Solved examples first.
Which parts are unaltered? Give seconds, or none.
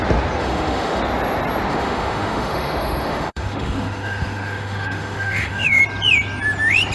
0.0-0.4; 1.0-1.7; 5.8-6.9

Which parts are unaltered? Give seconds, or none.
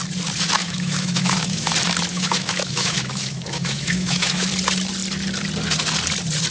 0.0-0.6; 1.7-2.1; 4.5-6.5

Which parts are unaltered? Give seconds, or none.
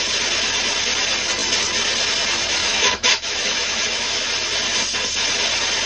0.0-2.6; 4.3-5.9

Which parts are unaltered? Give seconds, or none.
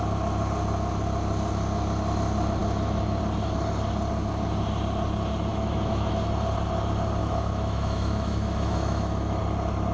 0.0-5.5; 6.1-7.2; 9.4-9.9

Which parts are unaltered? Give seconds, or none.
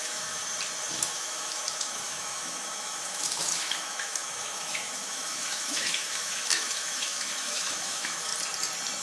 0.4-0.9; 8.3-9.0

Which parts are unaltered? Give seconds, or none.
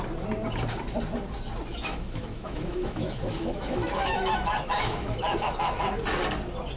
0.0-1.7; 5.8-6.8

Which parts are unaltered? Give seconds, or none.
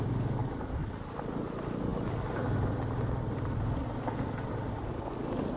0.0-0.4; 0.9-5.6